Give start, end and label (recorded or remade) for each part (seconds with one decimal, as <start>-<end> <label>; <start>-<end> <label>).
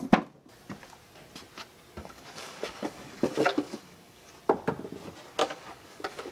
0.0-2.0 recorded; 2.0-4.3 remade; 4.3-5.4 recorded; 5.4-6.3 remade